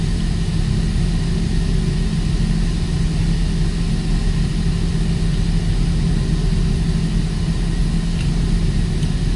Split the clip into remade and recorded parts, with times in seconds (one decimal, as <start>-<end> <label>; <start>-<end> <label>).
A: 0.0-9.4 recorded

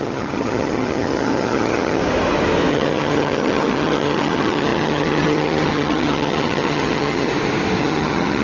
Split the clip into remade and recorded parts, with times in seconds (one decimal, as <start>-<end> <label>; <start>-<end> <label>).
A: 0.0-2.0 remade; 2.0-2.7 recorded; 2.7-7.3 remade; 7.3-7.8 recorded; 7.8-8.4 remade

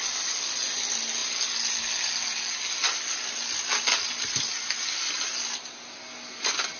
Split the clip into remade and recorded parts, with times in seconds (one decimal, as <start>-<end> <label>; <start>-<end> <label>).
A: 0.0-6.8 recorded

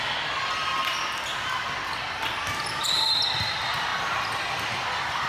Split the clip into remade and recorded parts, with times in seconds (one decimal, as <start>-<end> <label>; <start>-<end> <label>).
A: 0.0-0.8 remade; 0.8-2.7 recorded; 2.7-3.9 remade; 3.9-5.3 recorded